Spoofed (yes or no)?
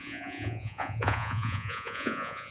yes